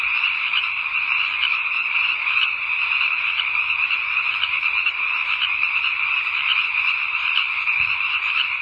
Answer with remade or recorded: remade